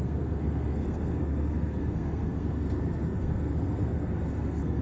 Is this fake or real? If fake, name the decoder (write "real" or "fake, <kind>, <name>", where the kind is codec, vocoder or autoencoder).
fake, codec, SNAC